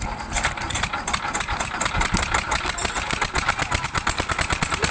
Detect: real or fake real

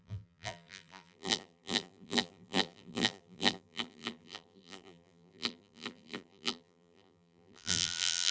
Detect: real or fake fake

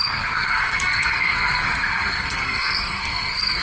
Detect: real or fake fake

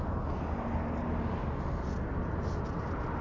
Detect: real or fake real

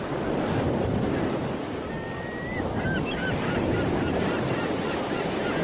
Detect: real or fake real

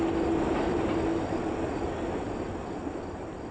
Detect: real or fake real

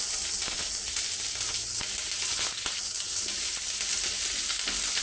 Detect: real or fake real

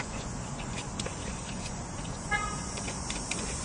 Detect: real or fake fake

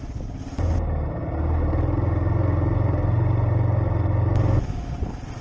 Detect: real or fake real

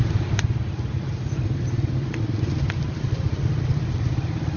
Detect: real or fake fake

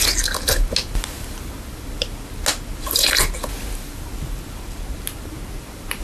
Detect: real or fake real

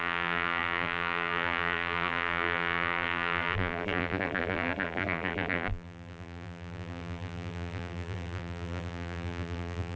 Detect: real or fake fake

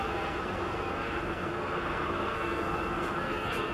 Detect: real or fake fake